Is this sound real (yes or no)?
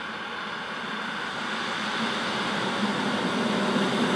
yes